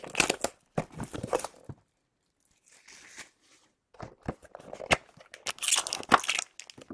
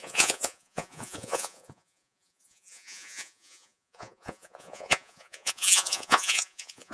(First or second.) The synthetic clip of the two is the second